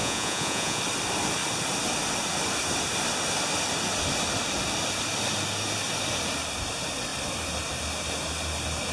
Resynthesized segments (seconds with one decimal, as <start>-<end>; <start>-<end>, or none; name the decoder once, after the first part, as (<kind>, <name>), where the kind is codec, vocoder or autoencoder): 0.0-0.8 (vocoder, Vocos)